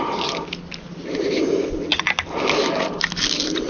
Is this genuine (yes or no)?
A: yes